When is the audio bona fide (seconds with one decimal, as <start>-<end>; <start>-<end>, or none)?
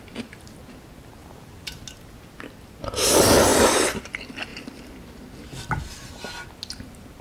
0.0-1.2; 1.8-3.5; 4.0-7.2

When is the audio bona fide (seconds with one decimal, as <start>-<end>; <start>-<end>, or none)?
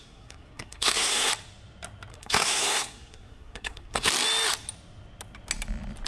1.3-2.1; 4.1-6.1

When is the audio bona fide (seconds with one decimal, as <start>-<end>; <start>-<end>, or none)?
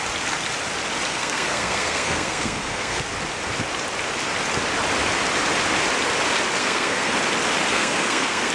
0.0-1.1; 3.0-6.6; 7.1-7.7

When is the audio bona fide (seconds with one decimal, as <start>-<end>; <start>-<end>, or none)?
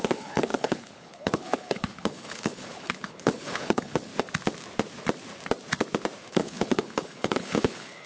4.1-6.3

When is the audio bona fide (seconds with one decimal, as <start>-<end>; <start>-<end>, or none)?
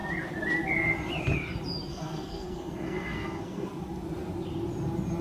0.0-1.9; 3.7-5.2